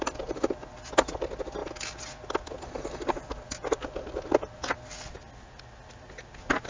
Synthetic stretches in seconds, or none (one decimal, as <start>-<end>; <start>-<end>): none